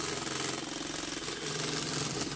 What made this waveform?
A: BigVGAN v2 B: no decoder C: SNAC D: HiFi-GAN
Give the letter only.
B